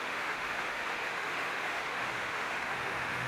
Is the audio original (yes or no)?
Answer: no